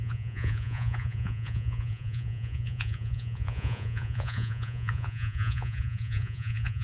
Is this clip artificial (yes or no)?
yes